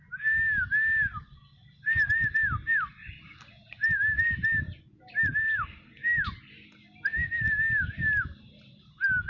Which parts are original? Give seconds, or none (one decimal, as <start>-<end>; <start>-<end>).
0.0-9.3